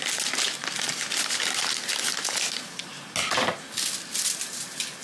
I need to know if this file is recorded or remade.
recorded